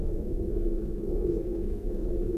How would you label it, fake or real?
fake